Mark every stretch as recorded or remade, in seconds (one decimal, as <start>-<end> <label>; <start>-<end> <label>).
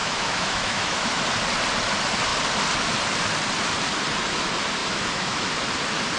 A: 0.0-1.2 remade; 1.2-4.8 recorded; 4.8-5.5 remade; 5.5-6.2 recorded